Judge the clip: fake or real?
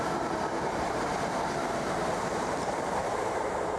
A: fake